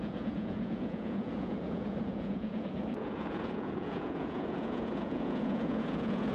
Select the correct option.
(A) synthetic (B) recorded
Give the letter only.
A